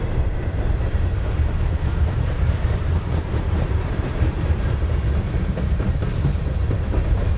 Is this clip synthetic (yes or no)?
yes